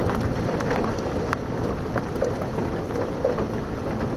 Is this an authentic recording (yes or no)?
yes